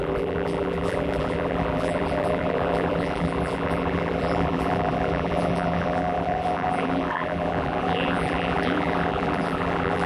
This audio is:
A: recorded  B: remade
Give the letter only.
B